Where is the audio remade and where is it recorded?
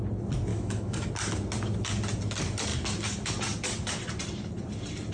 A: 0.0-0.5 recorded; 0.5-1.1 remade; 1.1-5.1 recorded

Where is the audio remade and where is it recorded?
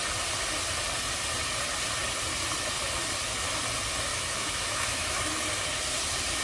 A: 0.0-4.1 recorded; 4.1-5.3 remade; 5.3-6.4 recorded